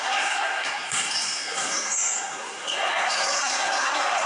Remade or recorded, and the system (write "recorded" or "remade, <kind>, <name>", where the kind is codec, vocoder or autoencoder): remade, codec, SNAC